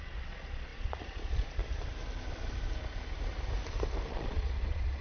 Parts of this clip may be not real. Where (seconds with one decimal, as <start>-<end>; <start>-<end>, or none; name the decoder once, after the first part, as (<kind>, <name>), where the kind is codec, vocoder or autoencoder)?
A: 0.0-1.6 (vocoder, Vocos); 4.1-5.0